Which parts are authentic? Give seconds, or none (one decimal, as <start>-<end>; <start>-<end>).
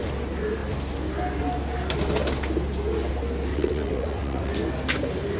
0.0-3.5; 4.5-5.4